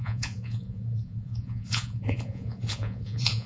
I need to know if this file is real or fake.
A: fake